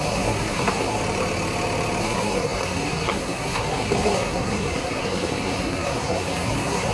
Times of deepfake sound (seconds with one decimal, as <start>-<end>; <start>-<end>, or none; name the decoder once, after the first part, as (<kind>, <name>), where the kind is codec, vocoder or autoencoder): 0.0-1.0 (codec, SNAC); 2.0-6.9